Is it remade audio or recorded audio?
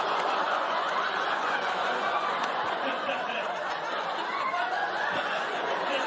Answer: remade